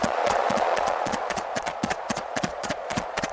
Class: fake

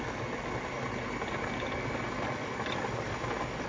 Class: real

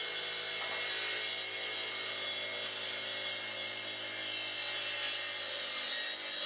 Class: real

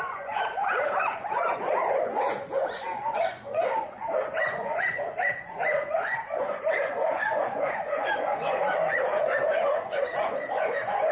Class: fake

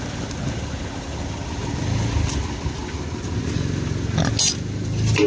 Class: real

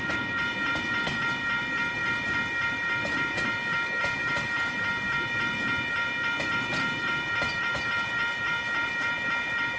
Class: fake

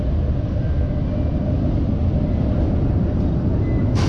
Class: real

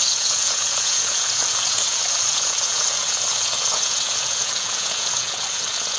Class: fake